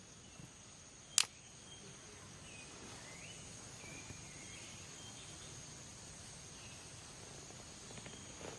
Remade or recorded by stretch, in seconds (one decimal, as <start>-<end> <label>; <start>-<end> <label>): 0.0-8.6 recorded